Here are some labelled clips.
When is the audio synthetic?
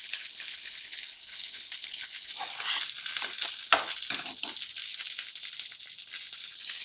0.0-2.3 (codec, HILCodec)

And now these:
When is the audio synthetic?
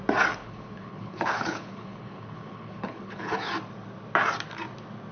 0.4-3.5 (codec, HILCodec)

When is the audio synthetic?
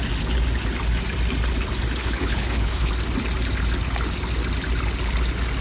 2.0-2.9 (codec, HILCodec)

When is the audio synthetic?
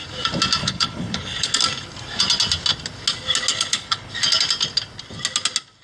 0.6-1.5 (codec, HILCodec); 3.5-4.1